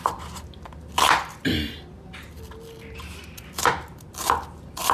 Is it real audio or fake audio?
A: real